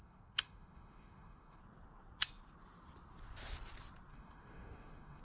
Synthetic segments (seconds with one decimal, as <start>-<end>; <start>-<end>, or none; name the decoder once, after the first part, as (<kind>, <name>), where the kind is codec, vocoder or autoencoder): 0.0-1.6 (autoencoder, DAC-VAE); 4.1-5.2

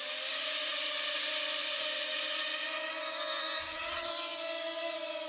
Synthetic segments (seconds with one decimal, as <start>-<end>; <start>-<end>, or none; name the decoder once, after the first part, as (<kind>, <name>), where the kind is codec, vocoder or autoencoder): 3.6-4.1 (vocoder, HiFi-GAN)

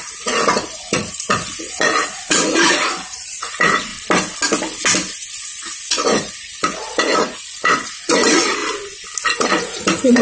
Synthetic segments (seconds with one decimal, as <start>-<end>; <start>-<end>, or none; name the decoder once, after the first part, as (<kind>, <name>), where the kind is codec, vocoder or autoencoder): 0.0-3.9 (vocoder, Vocos); 5.4-8.6; 9.4-10.2

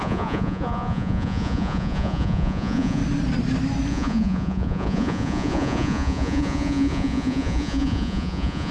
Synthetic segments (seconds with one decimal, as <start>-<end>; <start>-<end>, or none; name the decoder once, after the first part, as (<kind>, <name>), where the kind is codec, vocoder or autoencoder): 0.0-3.0 (vocoder, Vocos); 3.9-8.7

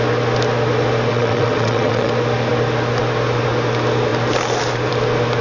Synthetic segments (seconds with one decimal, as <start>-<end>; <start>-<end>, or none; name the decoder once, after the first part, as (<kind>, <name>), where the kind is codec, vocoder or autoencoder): 1.1-2.1 (vocoder, WaveNeXt)